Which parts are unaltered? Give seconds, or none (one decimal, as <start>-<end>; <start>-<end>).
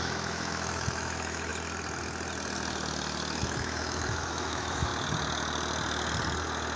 1.5-3.4; 4.9-6.8